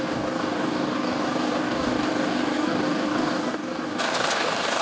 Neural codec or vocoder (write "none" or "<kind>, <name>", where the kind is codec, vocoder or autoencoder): codec, DAC